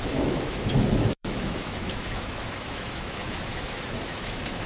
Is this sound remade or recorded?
remade